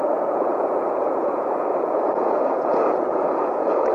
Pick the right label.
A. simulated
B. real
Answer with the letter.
A